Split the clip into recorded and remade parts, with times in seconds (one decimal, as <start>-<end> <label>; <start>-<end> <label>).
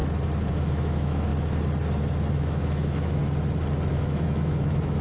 0.0-0.5 recorded; 0.5-1.3 remade; 1.3-2.3 recorded; 2.3-3.2 remade; 3.2-3.9 recorded; 3.9-5.0 remade